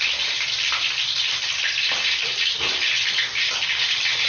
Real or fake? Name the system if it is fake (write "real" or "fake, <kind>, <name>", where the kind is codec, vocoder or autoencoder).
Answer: real